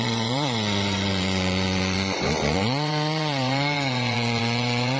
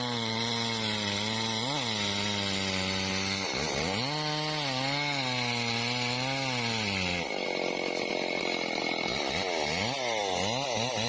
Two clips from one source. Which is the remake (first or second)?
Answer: first